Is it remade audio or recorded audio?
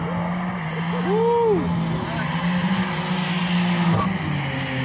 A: recorded